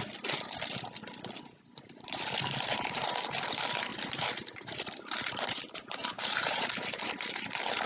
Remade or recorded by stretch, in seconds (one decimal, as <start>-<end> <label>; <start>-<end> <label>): 0.0-1.7 recorded; 1.7-3.2 remade; 3.2-3.9 recorded; 3.9-7.0 remade; 7.0-7.9 recorded